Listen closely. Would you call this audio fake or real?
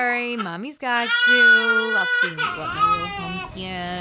real